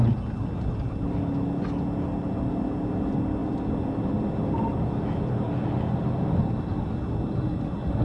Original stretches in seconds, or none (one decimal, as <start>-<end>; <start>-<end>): 0.0-8.0